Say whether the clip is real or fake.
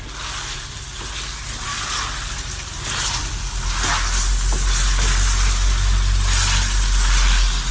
real